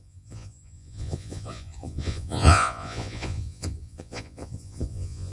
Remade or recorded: remade